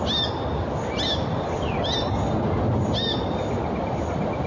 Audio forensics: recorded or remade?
recorded